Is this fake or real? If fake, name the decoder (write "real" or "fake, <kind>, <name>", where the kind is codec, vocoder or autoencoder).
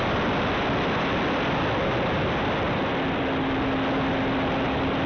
real